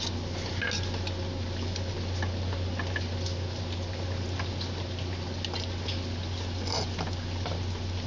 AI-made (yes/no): no